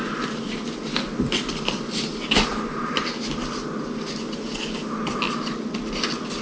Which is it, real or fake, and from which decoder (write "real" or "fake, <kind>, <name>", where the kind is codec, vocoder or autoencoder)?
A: real